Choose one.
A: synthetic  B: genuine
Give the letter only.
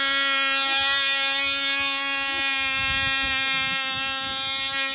B